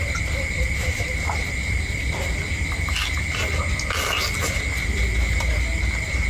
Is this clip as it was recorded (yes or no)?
yes